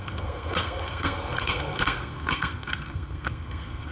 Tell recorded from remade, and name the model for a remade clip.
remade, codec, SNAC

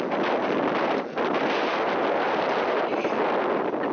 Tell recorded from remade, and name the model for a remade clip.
recorded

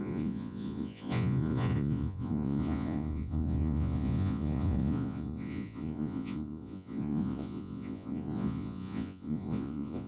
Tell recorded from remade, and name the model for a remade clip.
remade, vocoder, Vocos